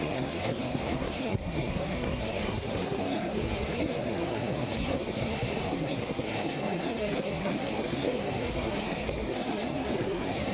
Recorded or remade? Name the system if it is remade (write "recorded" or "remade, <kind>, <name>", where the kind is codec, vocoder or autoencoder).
remade, codec, SNAC